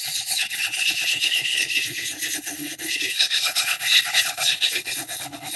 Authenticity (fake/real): fake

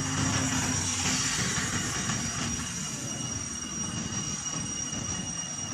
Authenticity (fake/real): real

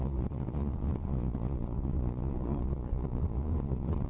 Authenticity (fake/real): fake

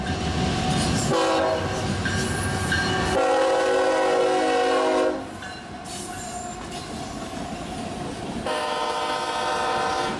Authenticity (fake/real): real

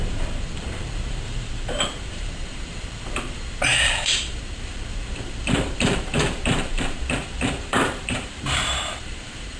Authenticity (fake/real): fake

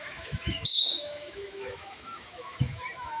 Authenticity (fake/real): fake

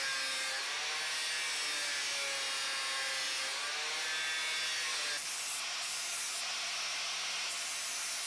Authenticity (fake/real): real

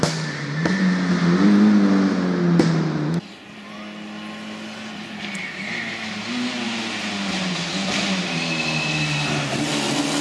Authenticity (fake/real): real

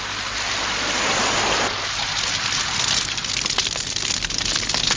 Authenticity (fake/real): real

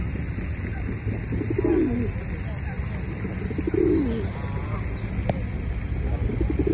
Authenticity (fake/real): real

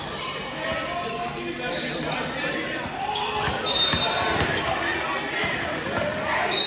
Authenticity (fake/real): real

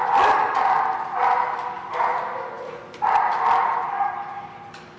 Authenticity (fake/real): real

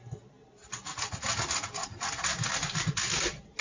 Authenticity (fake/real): real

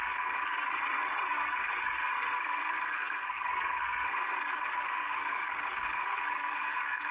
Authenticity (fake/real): fake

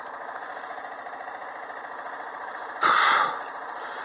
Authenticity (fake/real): real